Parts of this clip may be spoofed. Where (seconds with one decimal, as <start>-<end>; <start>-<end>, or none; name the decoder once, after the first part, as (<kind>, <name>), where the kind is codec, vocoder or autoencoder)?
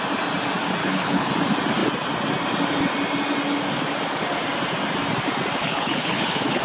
0.8-1.3 (codec, HILCodec); 5.6-6.6